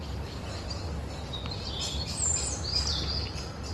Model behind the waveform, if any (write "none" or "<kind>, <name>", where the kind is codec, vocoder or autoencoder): none